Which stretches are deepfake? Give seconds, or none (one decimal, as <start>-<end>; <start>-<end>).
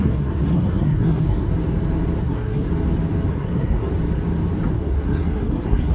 0.0-1.5; 2.2-2.7; 3.3-3.9; 4.7-5.9